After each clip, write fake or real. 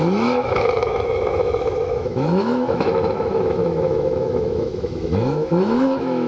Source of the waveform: fake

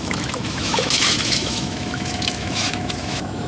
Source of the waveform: fake